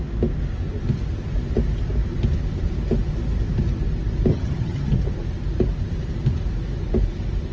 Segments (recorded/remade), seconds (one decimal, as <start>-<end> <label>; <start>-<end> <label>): 0.0-4.3 recorded; 4.3-4.9 remade; 4.9-7.5 recorded